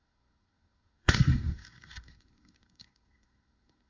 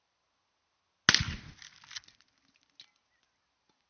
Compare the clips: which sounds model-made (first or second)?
first